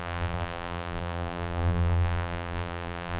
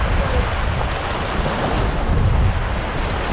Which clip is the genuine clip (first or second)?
second